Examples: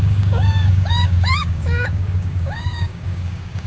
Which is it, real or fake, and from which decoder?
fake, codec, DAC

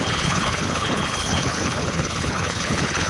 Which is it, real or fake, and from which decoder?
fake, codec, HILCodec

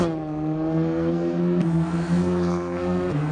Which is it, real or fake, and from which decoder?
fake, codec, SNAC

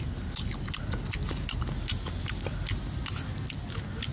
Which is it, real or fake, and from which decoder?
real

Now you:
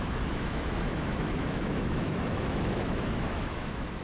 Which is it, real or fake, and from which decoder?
fake, autoencoder, DAC-VAE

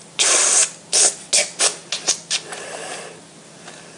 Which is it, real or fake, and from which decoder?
real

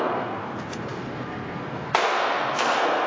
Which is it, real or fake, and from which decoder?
fake, codec, SNAC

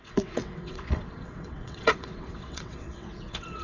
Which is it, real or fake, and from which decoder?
fake, vocoder, WaveNeXt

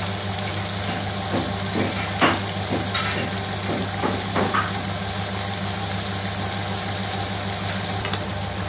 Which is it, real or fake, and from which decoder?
real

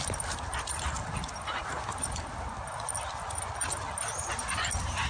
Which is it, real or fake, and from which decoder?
real